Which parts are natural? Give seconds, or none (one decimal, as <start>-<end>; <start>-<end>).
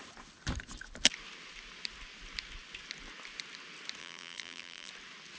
0.0-4.0; 4.9-5.4